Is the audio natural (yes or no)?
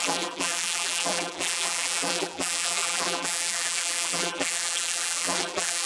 no